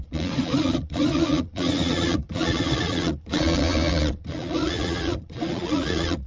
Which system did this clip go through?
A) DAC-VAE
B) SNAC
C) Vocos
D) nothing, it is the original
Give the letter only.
C